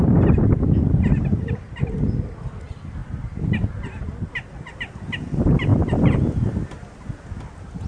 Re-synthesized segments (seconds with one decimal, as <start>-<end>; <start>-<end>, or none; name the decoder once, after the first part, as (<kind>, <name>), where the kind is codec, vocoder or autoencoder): none